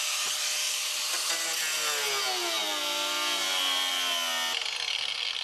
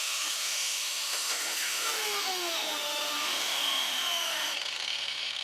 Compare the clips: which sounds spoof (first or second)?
second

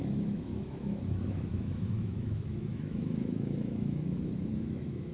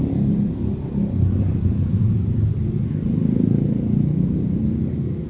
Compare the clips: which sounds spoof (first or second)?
first